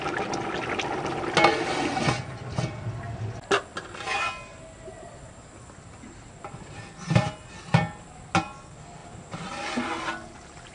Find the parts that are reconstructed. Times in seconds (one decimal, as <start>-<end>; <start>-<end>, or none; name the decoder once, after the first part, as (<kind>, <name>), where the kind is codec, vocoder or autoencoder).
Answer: 3.7-7.3 (vocoder, BigVGAN v2); 9.0-9.6